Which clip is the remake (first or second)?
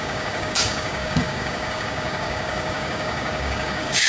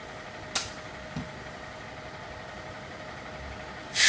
first